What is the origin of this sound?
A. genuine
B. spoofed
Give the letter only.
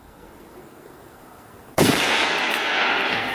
B